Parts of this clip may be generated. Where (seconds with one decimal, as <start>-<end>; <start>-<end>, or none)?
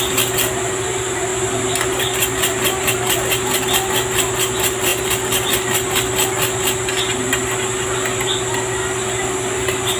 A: none